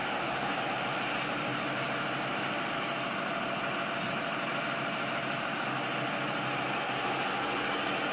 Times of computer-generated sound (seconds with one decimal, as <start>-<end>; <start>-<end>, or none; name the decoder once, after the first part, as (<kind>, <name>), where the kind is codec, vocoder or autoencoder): 0.0-0.6 (codec, DAC)